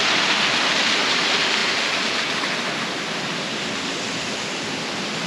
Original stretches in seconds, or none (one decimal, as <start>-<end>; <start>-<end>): 0.0-5.3